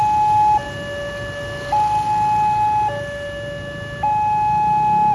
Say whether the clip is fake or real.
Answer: real